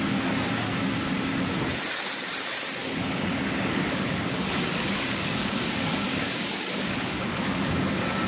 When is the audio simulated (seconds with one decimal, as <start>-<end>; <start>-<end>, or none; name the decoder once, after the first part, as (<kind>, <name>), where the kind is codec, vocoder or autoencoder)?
2.8-7.7 (codec, DAC)

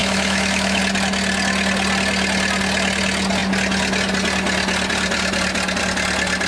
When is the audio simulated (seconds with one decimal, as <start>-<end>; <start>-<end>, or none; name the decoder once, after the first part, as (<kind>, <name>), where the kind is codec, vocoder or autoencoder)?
0.0-0.8 (autoencoder, DAC-VAE)

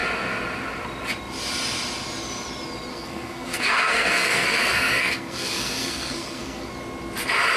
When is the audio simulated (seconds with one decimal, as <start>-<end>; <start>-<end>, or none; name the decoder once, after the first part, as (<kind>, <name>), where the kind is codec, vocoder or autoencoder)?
2.9-6.7 (codec, SNAC)

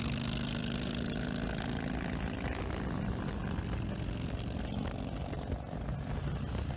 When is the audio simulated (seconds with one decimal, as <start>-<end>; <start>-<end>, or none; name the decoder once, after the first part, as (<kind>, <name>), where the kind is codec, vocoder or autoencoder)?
none

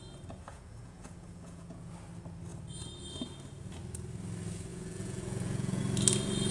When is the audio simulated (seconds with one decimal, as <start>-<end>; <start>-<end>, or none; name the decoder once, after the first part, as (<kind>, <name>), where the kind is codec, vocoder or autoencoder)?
0.5-1.9 (vocoder, Vocos); 4.7-5.8